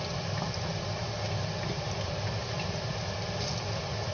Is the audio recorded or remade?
recorded